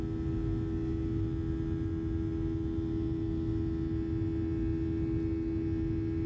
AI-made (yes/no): no